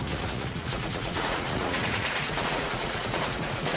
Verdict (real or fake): fake